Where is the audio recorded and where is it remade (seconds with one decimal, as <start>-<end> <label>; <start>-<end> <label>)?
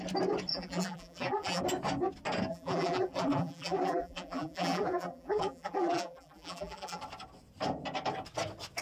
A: 0.0-0.5 recorded; 0.5-1.6 remade; 1.6-2.5 recorded; 2.5-7.0 remade; 7.0-8.8 recorded